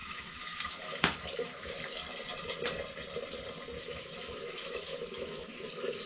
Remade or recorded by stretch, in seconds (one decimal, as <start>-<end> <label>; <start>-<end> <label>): 0.0-2.0 remade; 2.0-3.8 recorded; 3.8-6.1 remade